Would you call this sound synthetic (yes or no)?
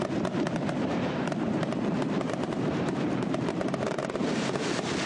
yes